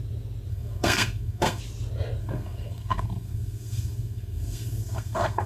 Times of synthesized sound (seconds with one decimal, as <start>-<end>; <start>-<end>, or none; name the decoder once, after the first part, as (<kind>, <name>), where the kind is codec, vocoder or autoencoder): 0.5-1.6 (codec, SNAC); 2.2-5.5